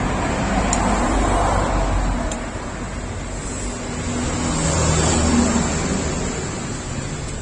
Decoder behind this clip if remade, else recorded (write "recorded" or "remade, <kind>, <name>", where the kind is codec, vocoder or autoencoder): recorded